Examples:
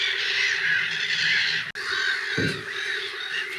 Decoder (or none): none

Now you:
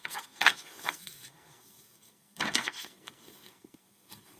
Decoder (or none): codec, SNAC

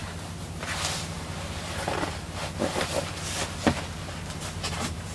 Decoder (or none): none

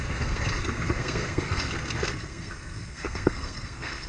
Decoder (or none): codec, SNAC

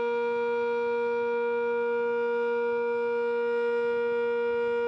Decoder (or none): none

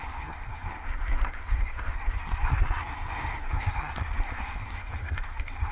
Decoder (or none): codec, SNAC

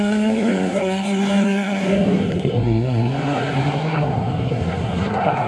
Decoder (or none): codec, SNAC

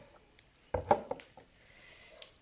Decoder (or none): none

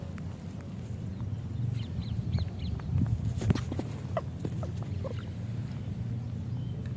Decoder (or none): none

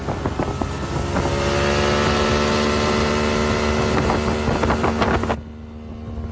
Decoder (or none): none